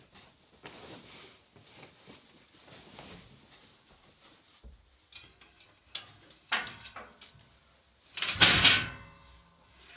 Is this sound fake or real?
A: real